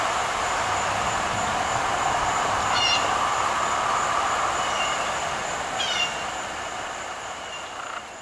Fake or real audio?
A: real